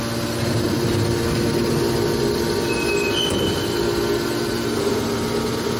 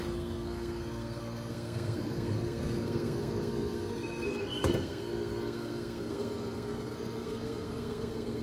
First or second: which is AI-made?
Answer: second